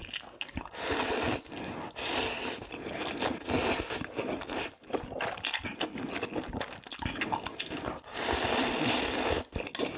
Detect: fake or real real